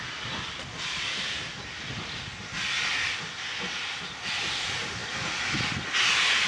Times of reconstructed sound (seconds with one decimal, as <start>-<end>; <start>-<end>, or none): none